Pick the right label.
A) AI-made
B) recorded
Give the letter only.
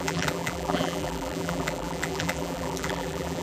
A